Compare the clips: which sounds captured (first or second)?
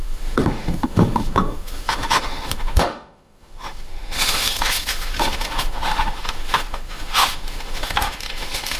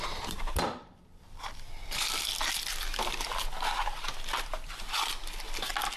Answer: second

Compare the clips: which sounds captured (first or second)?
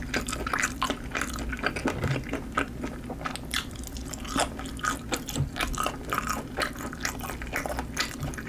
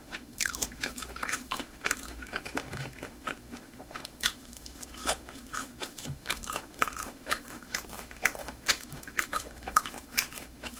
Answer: first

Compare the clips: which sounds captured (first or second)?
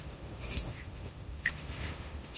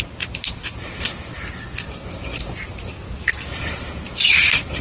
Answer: second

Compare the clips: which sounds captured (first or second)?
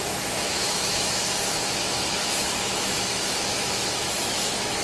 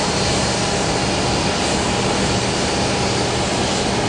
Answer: second